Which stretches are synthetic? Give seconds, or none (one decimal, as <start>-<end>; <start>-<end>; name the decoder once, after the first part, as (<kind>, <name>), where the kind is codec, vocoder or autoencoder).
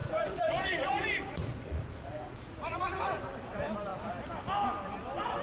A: 0.0-3.2 (vocoder, Vocos)